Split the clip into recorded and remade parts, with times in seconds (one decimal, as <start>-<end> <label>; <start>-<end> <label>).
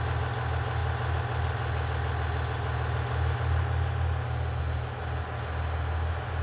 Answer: 0.0-6.4 recorded